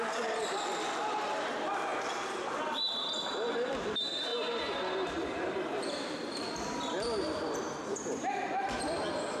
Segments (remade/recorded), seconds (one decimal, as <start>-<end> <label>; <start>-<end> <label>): 0.0-9.4 remade